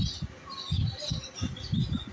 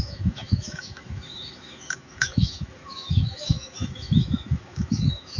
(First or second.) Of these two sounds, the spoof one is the second